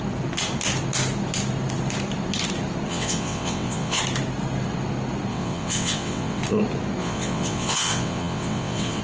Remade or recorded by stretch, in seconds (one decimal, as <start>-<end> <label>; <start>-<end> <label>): 0.0-2.9 recorded; 2.9-4.0 remade; 4.0-5.3 recorded; 5.3-6.4 remade; 6.4-7.0 recorded; 7.0-9.0 remade